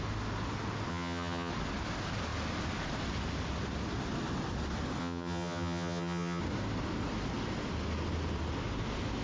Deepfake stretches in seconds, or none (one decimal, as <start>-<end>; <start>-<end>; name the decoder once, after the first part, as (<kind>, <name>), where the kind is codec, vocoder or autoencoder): 0.9-1.5 (vocoder, HiFi-GAN); 5.0-6.4